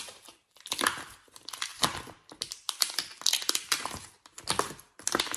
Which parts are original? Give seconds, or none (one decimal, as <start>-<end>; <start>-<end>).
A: 0.0-1.7; 4.5-5.4